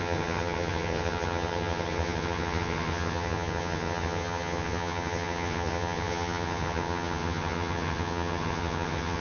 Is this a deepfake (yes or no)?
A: yes